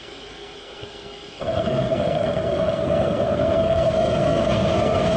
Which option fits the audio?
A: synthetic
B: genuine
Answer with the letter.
A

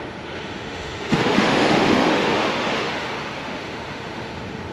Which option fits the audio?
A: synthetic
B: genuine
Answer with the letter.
A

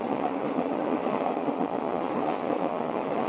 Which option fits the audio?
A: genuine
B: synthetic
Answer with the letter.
B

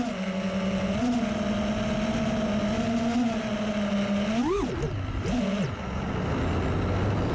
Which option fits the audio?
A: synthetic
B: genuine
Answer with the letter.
B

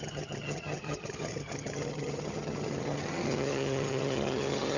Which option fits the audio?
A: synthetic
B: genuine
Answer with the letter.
A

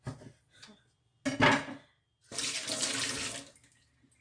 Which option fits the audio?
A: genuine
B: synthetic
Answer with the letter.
A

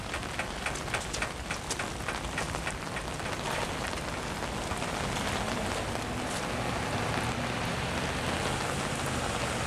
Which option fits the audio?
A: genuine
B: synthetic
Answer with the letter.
A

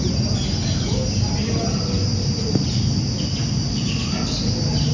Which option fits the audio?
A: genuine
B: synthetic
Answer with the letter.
A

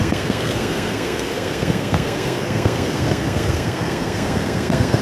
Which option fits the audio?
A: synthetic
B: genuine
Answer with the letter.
A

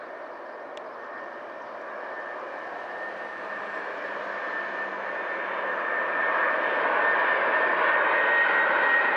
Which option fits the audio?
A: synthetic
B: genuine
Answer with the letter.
B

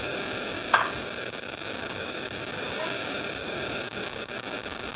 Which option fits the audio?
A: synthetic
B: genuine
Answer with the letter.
A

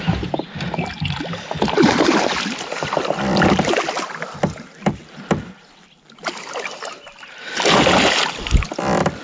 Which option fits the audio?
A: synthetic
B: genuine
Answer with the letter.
B